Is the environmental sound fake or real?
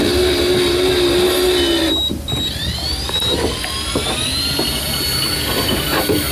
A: real